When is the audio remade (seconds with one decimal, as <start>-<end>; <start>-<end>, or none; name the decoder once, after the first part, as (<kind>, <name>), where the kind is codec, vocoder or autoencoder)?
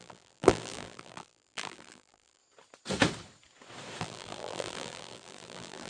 0.0-2.4 (vocoder, BigVGAN v2); 4.0-5.9